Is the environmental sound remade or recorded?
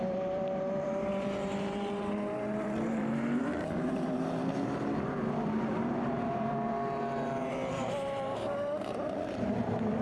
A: remade